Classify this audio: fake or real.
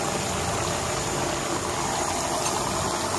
real